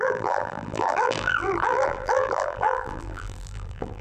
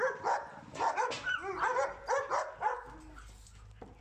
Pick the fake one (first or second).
first